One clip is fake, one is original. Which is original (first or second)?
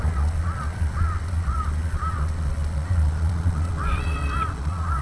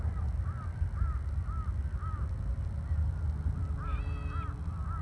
second